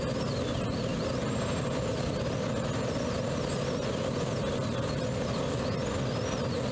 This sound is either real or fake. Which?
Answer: real